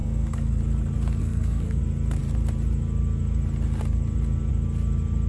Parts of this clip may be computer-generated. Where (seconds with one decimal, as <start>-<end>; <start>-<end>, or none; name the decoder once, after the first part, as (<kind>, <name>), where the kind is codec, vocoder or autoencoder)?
0.0-0.6 (codec, SNAC); 1.2-1.8